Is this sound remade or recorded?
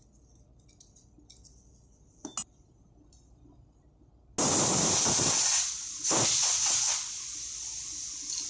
recorded